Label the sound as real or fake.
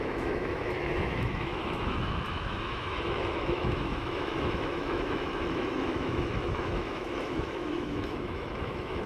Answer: fake